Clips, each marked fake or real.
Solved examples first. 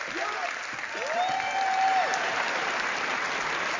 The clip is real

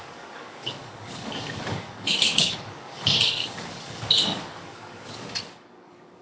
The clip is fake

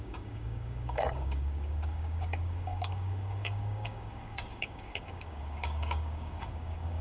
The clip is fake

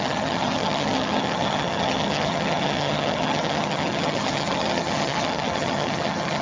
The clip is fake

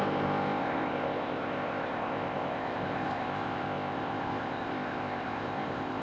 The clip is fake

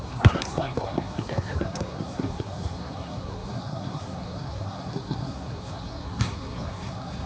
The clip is fake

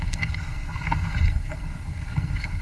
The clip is fake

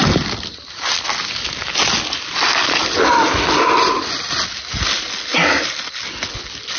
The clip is real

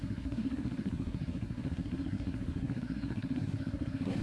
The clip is fake